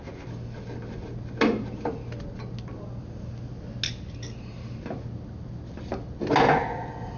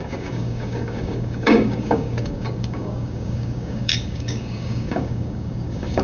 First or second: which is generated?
second